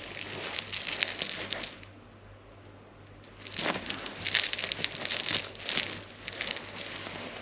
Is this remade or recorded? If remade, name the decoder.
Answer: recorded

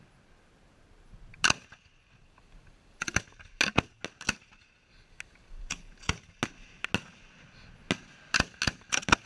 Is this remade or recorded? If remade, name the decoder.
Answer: recorded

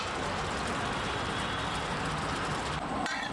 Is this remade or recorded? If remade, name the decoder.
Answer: recorded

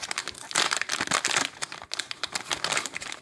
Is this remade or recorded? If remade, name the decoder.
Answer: recorded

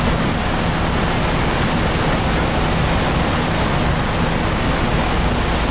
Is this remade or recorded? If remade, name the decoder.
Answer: recorded